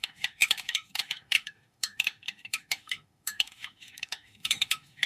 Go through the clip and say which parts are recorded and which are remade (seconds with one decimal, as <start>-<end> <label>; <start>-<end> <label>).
0.0-5.1 remade